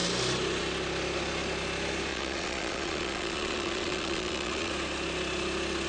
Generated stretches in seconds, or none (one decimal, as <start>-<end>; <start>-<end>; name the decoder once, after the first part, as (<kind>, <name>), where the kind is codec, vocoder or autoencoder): 2.1-4.7 (vocoder, Vocos)